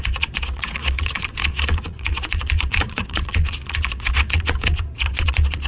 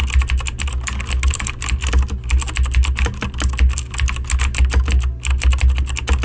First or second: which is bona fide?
second